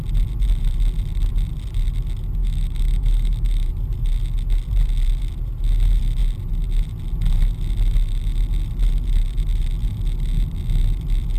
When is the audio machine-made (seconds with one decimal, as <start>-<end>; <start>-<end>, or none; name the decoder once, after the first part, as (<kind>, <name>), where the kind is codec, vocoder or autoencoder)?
2.4-3.7 (autoencoder, DAC-VAE)